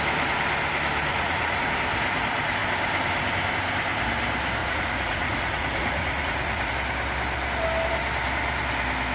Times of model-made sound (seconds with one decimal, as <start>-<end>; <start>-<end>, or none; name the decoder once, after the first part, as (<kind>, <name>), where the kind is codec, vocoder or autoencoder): 1.1-1.7 (vocoder, Vocos); 4.6-6.7